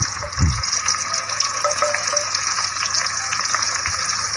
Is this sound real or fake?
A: fake